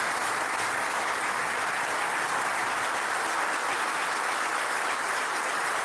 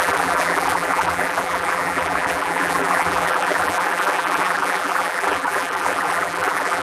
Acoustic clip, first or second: first